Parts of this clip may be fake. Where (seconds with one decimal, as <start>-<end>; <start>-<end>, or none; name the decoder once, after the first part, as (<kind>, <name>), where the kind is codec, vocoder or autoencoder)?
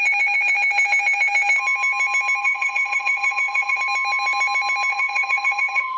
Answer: 2.4-3.8 (vocoder, HiFi-GAN); 4.9-6.0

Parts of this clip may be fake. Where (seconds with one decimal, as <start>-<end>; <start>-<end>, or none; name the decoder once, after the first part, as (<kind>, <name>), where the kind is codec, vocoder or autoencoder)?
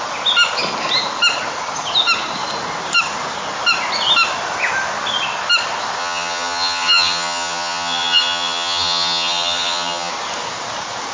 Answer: 6.0-10.1 (vocoder, HiFi-GAN)